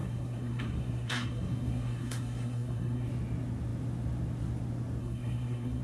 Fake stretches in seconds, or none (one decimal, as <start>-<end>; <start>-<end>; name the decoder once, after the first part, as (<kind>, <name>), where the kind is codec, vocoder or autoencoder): 0.0-3.1 (codec, SNAC); 5.0-5.8